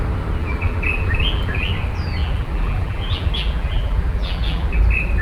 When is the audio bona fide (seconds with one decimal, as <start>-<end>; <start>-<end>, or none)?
0.0-0.4; 1.7-2.2; 4.8-5.2